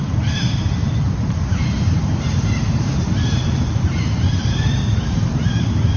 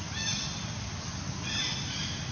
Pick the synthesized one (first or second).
first